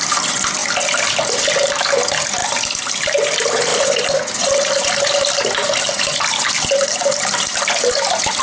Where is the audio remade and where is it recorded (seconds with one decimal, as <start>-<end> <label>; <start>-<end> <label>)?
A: 0.0-8.4 recorded